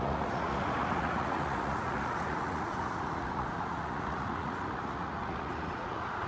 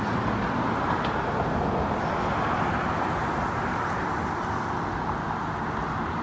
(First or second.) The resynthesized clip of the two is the first